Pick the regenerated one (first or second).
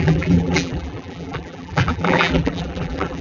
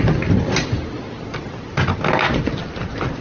first